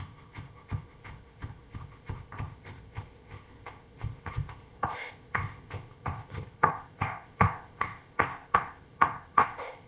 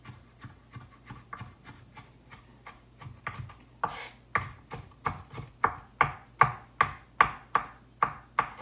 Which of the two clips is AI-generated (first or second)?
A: first